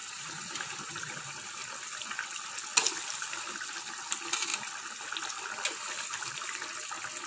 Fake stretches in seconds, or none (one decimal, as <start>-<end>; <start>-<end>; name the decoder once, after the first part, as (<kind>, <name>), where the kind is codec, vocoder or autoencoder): 0.0-1.2 (vocoder, BigVGAN v2)

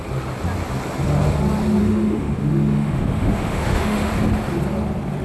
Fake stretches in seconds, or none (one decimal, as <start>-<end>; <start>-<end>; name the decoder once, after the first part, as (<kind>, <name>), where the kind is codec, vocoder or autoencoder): 1.8-4.1 (autoencoder, DAC-VAE)